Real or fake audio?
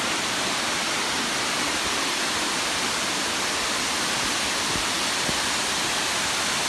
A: real